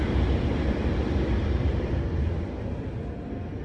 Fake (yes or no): no